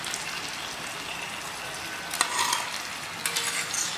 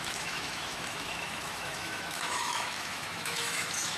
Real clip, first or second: first